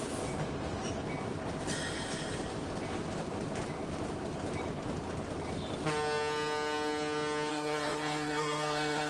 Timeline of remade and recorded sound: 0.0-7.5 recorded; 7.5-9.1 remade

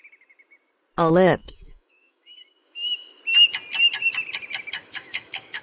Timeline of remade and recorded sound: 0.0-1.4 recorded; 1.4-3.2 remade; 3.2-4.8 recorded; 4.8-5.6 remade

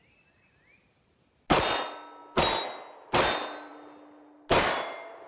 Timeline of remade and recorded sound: 0.0-5.3 recorded